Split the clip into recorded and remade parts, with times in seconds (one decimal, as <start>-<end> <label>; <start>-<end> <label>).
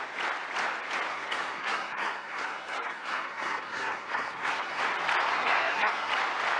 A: 0.0-1.1 recorded; 1.1-4.8 remade; 4.8-5.3 recorded; 5.3-6.1 remade; 6.1-6.6 recorded